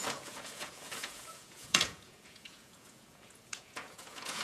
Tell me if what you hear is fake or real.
fake